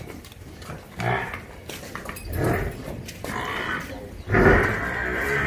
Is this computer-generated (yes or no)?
yes